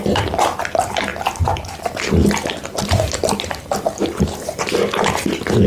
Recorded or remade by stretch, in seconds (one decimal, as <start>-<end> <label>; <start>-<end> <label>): 0.0-5.7 recorded